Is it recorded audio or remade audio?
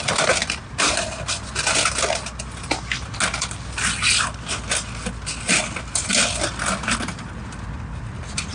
recorded